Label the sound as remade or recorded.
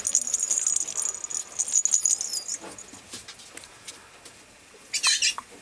recorded